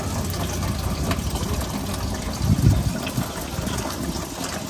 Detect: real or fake real